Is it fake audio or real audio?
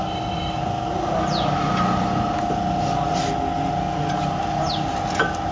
real